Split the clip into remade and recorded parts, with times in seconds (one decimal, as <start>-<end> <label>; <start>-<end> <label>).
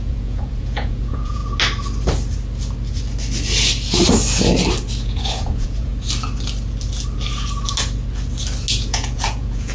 0.0-1.4 remade; 1.4-5.0 recorded; 5.0-5.9 remade; 5.9-8.7 recorded; 8.7-9.7 remade